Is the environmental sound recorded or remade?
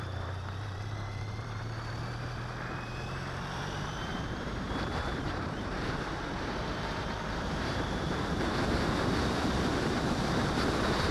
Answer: remade